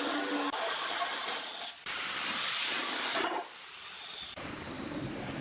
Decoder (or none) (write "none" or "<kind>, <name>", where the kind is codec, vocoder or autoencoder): none